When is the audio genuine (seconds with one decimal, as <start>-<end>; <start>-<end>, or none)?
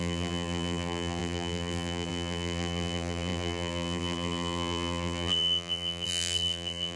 none